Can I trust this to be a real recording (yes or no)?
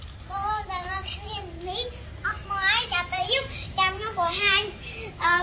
no